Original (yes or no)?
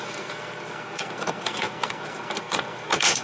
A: no